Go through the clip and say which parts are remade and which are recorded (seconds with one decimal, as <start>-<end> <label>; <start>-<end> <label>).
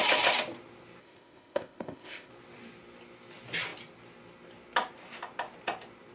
0.0-1.0 recorded; 1.0-2.3 remade; 2.3-6.1 recorded